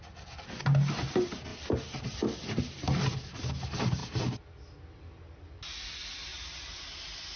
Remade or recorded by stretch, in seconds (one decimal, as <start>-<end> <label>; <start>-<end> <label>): 0.0-1.5 recorded; 1.5-2.1 remade; 2.1-6.3 recorded; 6.3-6.8 remade; 6.8-7.4 recorded